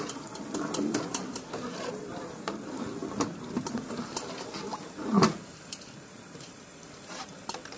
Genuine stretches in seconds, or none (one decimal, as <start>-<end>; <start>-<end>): none